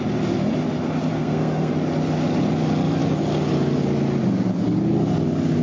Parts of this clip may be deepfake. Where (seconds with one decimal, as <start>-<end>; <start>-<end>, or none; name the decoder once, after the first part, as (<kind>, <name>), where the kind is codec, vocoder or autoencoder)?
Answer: 1.1-1.7 (codec, SNAC)